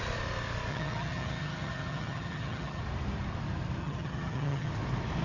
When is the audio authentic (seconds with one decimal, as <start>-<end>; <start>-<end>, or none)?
0.0-0.7; 2.8-3.8; 4.7-5.2